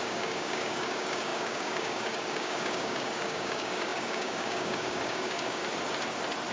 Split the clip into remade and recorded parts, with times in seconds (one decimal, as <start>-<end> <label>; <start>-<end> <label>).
0.0-5.6 remade; 5.6-6.5 recorded